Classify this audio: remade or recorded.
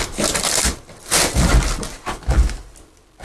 recorded